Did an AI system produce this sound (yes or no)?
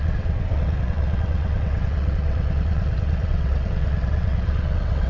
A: yes